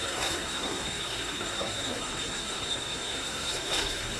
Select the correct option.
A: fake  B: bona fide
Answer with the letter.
A